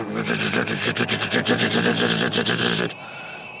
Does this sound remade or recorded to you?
recorded